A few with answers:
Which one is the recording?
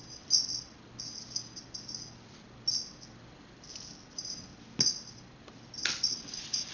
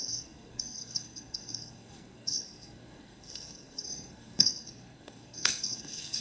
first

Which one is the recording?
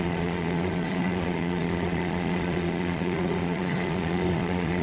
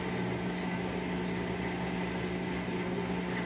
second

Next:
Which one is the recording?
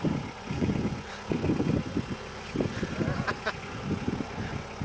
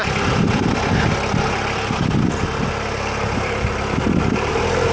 second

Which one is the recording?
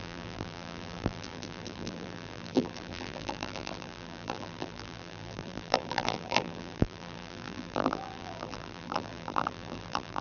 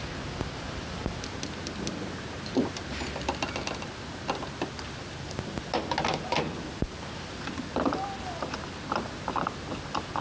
second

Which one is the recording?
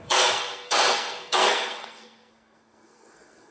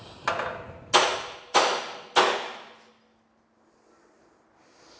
second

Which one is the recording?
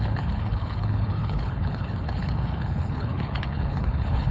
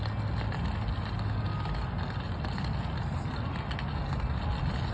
second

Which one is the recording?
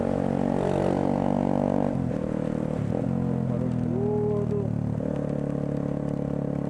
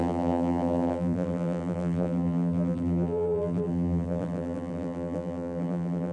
first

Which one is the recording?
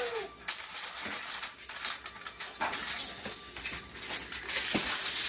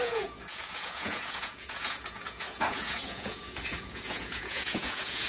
first